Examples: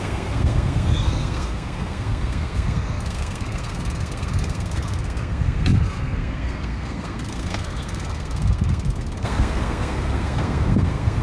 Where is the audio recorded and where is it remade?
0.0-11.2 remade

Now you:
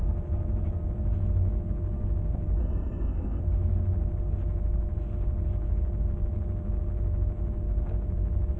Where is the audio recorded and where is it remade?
0.0-2.6 recorded; 2.6-3.4 remade; 3.4-8.6 recorded

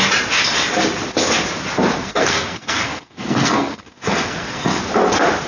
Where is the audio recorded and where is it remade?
0.0-2.0 recorded; 2.0-4.8 remade; 4.8-5.5 recorded

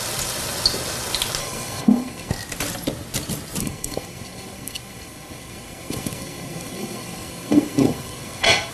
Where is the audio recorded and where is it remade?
0.0-1.4 recorded; 1.4-2.3 remade; 2.3-3.6 recorded; 3.6-8.7 remade

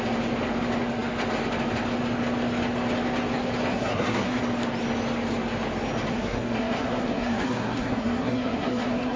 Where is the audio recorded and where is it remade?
0.0-3.7 recorded; 3.7-4.4 remade; 4.4-6.1 recorded; 6.1-9.2 remade

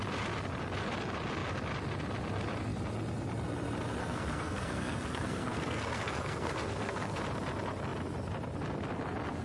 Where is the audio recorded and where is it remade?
0.0-4.0 recorded; 4.0-7.2 remade; 7.2-9.4 recorded